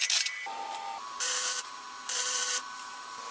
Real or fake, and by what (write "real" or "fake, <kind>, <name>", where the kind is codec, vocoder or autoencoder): fake, vocoder, BigVGAN v2